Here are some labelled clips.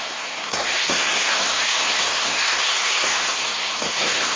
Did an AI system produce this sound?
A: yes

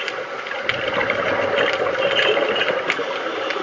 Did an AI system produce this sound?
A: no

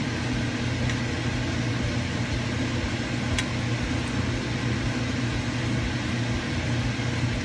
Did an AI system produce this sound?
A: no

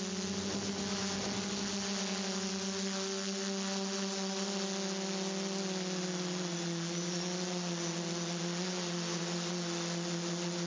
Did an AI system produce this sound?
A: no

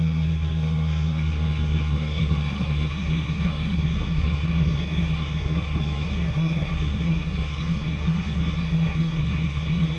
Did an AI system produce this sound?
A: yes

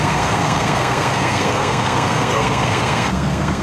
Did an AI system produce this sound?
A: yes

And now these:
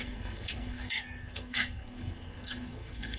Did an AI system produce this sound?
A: yes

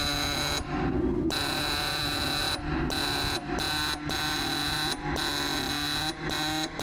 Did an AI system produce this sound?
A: no